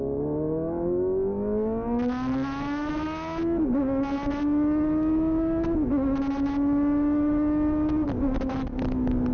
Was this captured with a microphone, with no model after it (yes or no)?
yes